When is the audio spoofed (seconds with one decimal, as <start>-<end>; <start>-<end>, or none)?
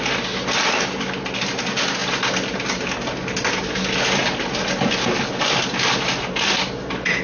none